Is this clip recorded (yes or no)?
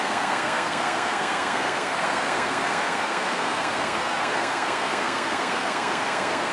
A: no